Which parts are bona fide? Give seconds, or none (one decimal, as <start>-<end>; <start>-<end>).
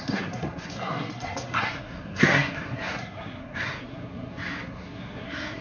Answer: none